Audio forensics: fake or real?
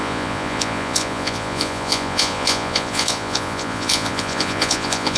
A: fake